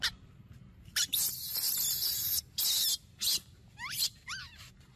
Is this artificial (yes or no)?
no